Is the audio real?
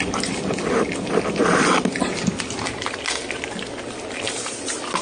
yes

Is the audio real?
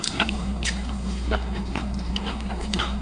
no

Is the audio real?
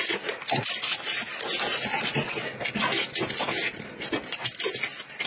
yes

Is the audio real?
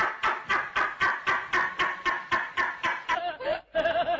yes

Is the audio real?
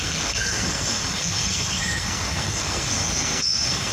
no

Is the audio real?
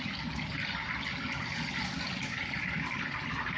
yes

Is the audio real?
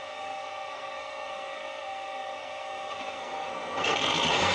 no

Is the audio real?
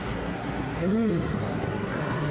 no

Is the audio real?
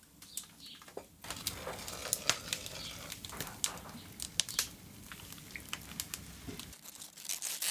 yes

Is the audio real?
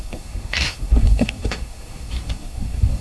no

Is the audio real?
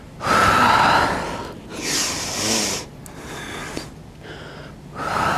yes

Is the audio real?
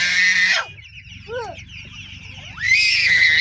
yes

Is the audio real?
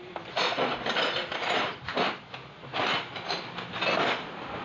yes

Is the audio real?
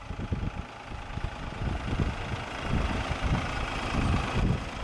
yes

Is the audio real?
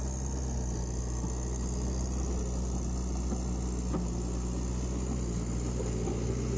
yes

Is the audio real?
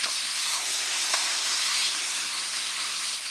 no